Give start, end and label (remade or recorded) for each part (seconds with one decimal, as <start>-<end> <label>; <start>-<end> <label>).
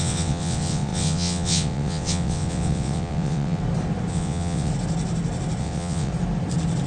0.0-3.6 remade; 3.6-4.1 recorded; 4.1-4.7 remade; 4.7-5.6 recorded; 5.6-6.1 remade; 6.1-6.9 recorded